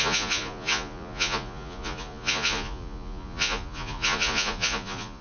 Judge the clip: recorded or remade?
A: remade